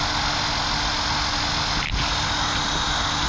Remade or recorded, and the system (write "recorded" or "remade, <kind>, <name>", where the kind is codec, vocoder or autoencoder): recorded